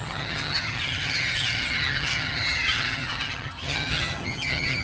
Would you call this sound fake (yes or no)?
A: yes